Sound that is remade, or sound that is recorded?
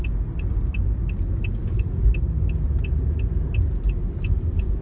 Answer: recorded